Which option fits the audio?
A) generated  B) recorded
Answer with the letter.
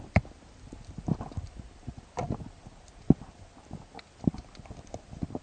A